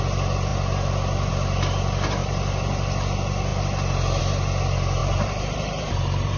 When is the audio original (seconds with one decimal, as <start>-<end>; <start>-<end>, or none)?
0.0-5.0